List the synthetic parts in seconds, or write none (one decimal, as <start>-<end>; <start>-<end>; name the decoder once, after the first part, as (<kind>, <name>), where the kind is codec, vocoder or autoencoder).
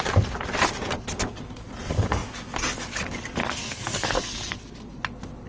3.4-5.0 (codec, SNAC)